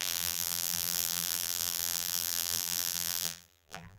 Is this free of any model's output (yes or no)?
no